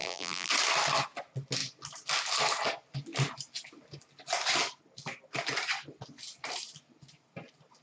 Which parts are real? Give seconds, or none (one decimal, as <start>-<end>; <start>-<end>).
0.5-7.8